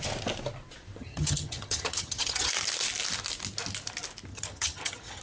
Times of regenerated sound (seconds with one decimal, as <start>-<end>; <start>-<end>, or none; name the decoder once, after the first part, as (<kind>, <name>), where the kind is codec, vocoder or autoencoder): 1.0-2.5 (vocoder, HiFi-GAN); 4.3-5.2